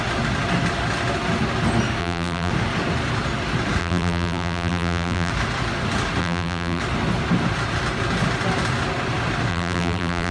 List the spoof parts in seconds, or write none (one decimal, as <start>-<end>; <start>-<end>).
2.0-2.5; 3.8-5.3; 6.2-6.8; 9.5-10.3